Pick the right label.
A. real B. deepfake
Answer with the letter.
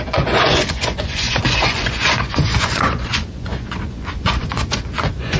B